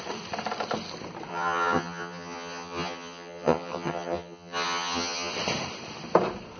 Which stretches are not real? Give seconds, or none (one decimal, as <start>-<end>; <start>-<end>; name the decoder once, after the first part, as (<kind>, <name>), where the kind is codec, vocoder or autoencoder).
1.3-5.3 (vocoder, HiFi-GAN)